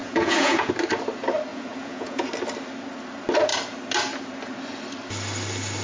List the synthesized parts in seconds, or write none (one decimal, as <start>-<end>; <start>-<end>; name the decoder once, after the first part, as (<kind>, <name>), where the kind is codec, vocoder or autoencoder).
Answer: 0.0-0.7 (vocoder, Vocos); 1.5-2.3